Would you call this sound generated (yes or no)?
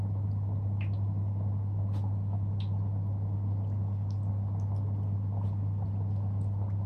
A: no